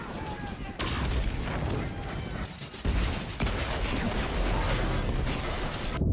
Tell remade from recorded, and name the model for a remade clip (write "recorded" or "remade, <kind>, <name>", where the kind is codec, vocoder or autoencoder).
recorded